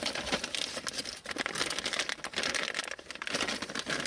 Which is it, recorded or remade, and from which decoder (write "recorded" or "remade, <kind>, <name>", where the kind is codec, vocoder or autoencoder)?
recorded